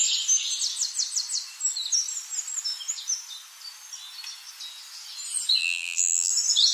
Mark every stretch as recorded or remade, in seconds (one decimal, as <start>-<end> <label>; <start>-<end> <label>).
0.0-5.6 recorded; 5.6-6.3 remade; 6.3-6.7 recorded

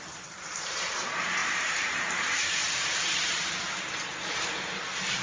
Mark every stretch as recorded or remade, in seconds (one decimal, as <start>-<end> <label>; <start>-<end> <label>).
0.0-5.2 remade

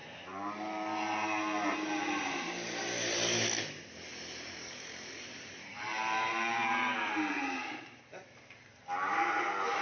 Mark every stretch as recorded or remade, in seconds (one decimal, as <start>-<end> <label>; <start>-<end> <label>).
0.0-2.4 remade; 2.4-4.1 recorded; 4.1-8.0 remade; 8.0-9.8 recorded

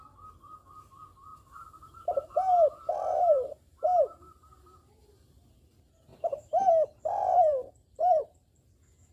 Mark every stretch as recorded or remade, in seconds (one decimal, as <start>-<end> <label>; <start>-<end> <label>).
0.0-1.3 recorded; 1.3-4.9 remade; 4.9-6.1 recorded; 6.1-8.7 remade; 8.7-9.1 recorded

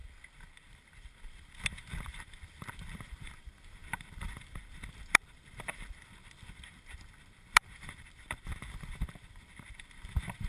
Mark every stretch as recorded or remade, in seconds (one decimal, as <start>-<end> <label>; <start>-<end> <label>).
0.0-0.7 recorded; 0.7-10.5 remade

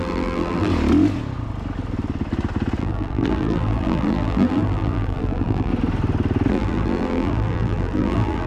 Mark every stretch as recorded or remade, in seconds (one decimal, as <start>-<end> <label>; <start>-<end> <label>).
0.0-0.7 remade; 0.7-2.8 recorded; 2.8-5.7 remade; 5.7-6.5 recorded; 6.5-8.5 remade

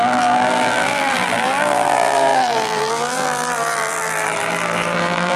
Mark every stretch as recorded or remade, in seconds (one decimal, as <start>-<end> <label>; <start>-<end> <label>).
0.0-5.4 remade